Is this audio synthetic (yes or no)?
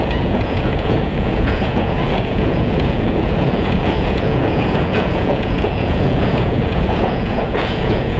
yes